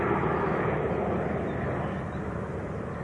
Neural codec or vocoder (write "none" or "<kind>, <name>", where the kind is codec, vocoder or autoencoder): none